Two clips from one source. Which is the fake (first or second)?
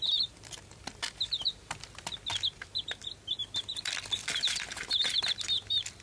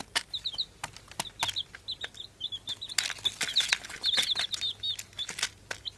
first